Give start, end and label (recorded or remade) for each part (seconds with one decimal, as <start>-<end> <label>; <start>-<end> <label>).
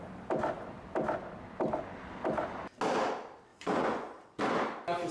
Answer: 0.0-3.5 recorded; 3.5-4.4 remade; 4.4-5.1 recorded